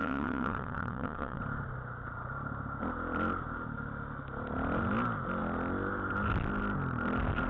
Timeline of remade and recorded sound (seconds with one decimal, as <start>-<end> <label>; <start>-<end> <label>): 0.0-1.4 remade; 1.4-7.5 recorded